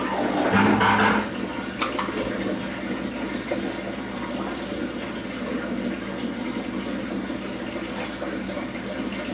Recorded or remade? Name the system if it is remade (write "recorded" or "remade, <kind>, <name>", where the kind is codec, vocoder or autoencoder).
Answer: recorded